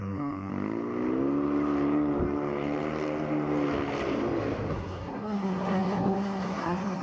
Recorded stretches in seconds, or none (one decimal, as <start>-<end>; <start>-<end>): 0.5-4.7